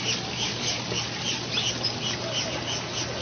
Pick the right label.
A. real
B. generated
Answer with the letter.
A